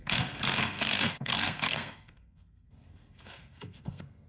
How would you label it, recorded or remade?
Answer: remade